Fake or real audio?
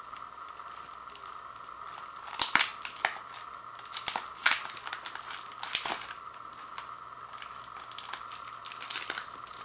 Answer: real